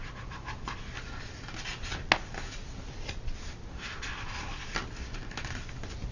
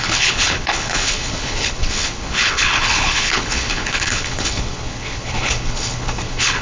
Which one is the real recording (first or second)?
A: first